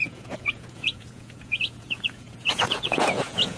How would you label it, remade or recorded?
remade